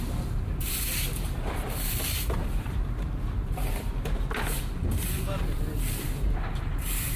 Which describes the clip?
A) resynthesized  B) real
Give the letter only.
A